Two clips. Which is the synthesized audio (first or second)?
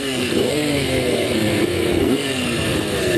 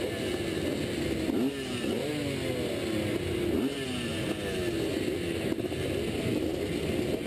first